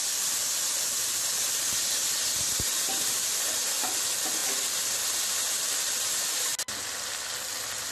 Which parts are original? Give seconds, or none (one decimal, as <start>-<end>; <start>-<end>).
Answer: 0.0-7.9